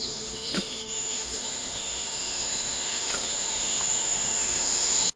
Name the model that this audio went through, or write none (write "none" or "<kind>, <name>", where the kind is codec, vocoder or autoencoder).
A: autoencoder, DAC-VAE